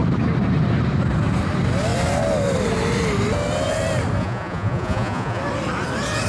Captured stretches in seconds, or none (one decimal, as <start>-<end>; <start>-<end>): 0.0-4.2; 5.4-6.3

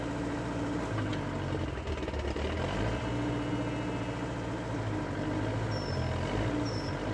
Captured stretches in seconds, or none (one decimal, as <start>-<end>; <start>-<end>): 0.0-7.1

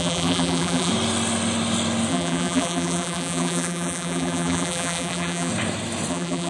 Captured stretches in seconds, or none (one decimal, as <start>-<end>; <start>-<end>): 0.9-2.1; 5.5-6.1

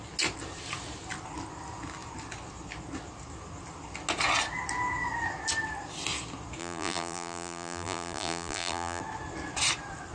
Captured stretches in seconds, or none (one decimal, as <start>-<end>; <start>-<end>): 0.0-6.6; 9.0-10.1

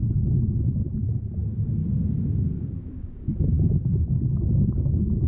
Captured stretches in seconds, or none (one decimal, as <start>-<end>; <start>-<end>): 0.0-1.8

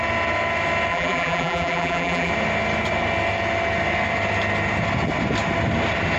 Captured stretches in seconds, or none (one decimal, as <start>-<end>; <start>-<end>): 0.0-0.9; 2.3-6.2

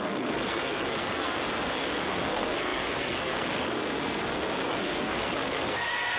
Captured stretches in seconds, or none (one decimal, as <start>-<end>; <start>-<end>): none